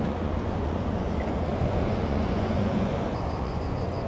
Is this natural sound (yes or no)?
no